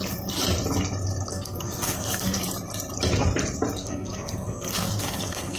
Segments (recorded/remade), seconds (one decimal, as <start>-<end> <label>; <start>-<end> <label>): 0.0-1.3 recorded; 1.3-2.4 remade; 2.4-3.8 recorded; 3.8-5.6 remade